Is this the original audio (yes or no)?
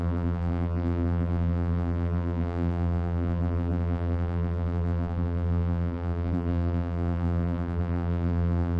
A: no